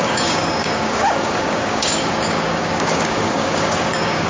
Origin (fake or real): fake